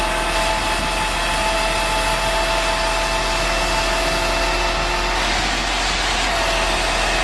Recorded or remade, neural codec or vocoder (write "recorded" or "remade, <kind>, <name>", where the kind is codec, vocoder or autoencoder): recorded